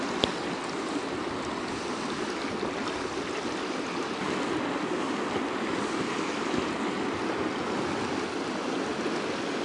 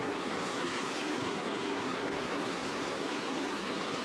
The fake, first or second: second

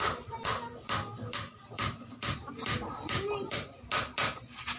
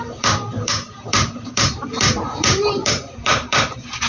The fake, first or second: second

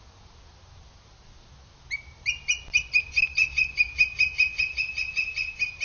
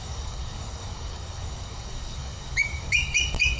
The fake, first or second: second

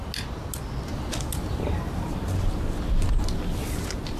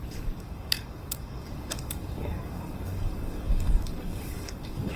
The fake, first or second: second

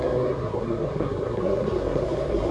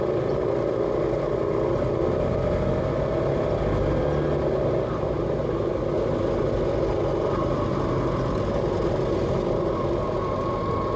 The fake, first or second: first